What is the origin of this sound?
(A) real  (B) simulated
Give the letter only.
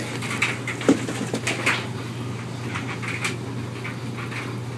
A